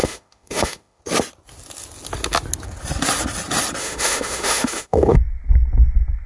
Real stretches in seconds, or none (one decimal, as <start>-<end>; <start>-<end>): 1.0-3.8; 5.2-6.3